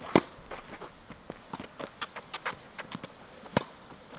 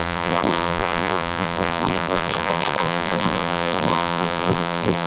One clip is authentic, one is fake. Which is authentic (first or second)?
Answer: first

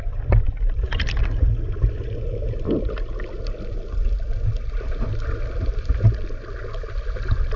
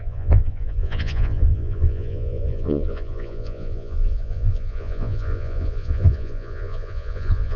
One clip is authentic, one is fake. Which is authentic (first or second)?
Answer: first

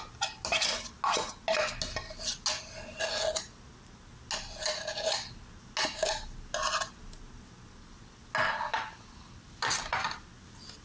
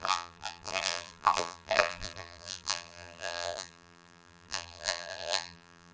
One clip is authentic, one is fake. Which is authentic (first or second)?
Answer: first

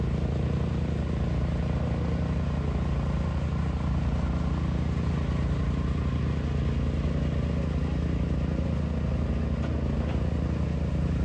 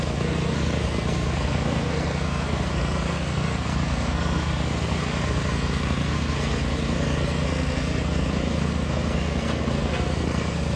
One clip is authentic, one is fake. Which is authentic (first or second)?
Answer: first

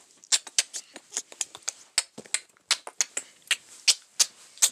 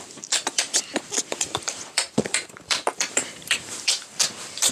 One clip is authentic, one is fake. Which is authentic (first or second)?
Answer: first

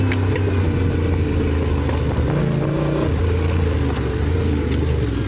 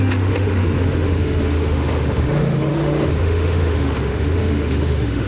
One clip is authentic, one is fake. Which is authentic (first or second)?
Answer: first